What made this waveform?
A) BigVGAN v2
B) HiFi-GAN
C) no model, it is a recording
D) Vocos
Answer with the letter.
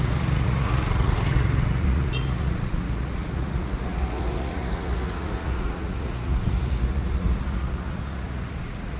D